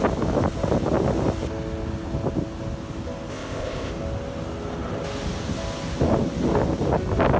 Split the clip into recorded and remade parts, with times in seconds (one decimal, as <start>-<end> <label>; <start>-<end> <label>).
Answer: 0.0-3.3 recorded; 3.3-3.9 remade; 3.9-7.4 recorded